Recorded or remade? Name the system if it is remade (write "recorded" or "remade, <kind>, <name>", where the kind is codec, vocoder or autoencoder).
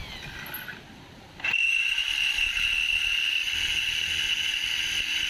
recorded